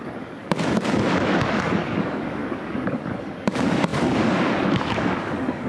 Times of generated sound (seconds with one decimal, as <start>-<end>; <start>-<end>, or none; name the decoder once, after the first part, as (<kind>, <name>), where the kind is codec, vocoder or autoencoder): 0.0-5.7 (codec, DAC)